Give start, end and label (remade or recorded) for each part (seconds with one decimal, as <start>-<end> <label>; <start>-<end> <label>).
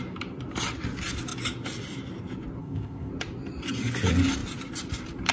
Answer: 0.0-2.6 recorded; 2.6-3.1 remade; 3.1-5.3 recorded